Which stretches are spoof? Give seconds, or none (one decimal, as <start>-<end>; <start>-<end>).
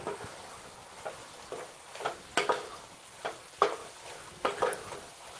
3.8-5.4